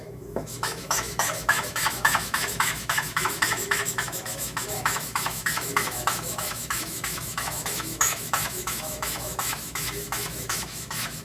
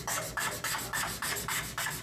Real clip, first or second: second